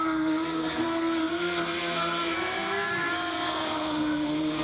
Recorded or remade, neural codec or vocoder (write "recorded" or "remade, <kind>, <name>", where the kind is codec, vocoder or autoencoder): remade, codec, SNAC